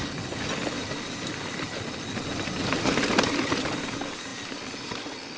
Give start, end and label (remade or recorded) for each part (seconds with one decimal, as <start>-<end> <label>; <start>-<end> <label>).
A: 0.0-5.4 recorded